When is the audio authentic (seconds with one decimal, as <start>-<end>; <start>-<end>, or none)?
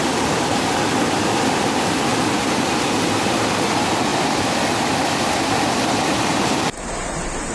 0.0-2.1; 3.3-4.1